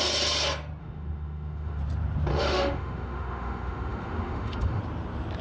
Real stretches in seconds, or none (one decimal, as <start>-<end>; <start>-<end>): 0.0-0.8; 1.8-2.3; 4.8-5.4